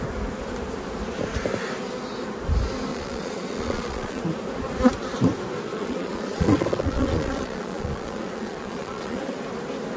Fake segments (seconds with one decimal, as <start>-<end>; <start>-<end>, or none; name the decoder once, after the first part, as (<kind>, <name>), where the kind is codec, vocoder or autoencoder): 2.9-4.2 (vocoder, Vocos); 5.7-9.4

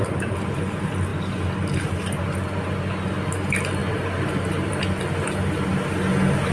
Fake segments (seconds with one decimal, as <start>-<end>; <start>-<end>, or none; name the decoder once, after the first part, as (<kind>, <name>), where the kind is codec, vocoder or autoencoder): none

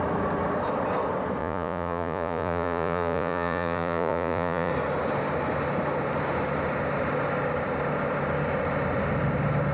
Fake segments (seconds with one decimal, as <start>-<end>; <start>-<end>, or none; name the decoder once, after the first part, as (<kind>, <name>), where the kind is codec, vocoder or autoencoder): 1.4-4.7 (vocoder, Vocos)

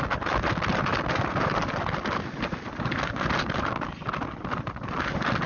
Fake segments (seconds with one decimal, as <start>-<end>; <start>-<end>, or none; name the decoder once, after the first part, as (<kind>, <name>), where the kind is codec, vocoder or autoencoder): none

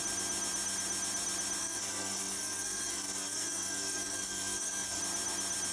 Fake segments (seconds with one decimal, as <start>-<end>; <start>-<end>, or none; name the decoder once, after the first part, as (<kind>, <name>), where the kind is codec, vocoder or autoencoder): 1.6-5.0 (codec, SNAC)

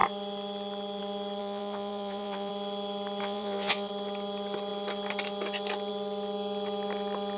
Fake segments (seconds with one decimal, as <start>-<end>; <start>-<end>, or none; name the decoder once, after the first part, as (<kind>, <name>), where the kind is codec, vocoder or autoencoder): 1.4-2.5 (vocoder, Vocos); 3.2-3.9

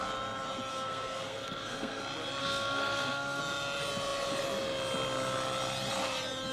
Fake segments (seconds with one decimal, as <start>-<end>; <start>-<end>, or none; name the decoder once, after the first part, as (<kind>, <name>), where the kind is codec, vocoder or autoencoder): 0.7-2.0 (codec, SNAC); 2.4-3.4